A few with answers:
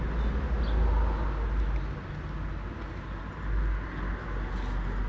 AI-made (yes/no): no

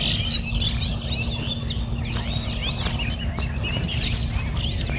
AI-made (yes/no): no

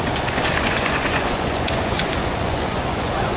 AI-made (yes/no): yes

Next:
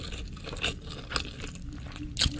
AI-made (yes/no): no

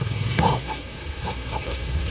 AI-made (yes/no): yes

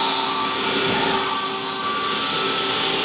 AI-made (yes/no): no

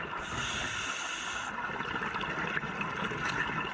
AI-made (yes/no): no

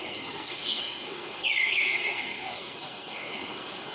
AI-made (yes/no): yes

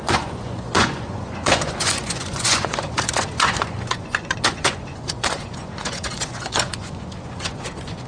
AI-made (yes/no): yes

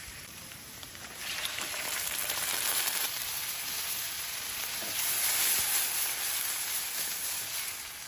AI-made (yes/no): yes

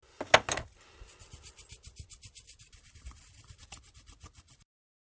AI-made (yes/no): no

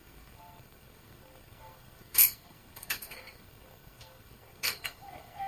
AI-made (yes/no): yes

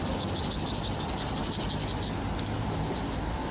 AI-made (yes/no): no